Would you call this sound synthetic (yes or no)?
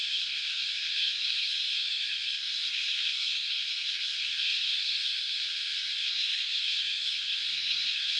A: yes